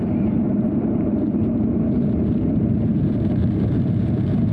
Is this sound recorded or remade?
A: remade